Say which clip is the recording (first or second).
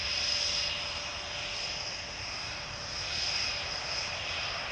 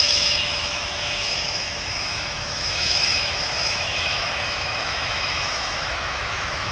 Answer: first